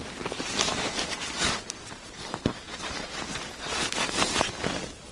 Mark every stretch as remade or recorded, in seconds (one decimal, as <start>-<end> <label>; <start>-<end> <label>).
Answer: 0.0-5.1 recorded